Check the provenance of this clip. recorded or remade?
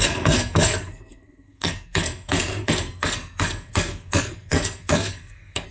remade